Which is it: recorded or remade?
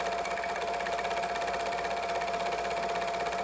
recorded